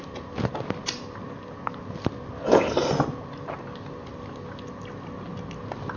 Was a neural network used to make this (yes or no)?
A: no